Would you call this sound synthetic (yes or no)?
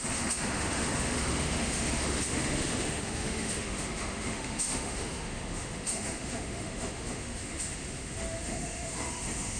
yes